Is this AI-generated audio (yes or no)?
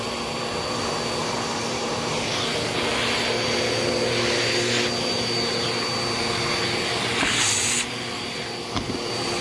no